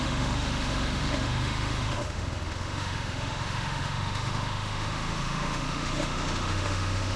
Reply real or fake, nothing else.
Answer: fake